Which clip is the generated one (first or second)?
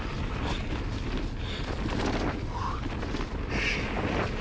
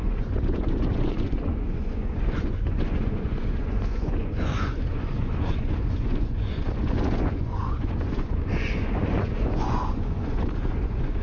second